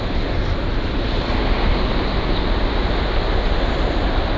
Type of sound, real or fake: real